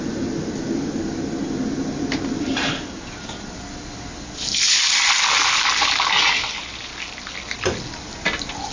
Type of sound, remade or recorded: recorded